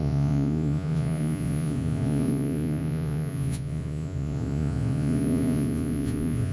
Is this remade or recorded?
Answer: remade